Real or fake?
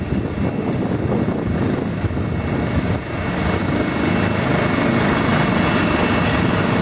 real